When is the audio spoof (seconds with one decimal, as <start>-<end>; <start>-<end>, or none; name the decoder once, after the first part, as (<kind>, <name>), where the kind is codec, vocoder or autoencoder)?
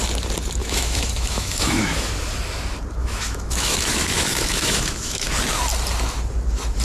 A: 0.6-2.1 (autoencoder, DAC-VAE); 3.0-5.3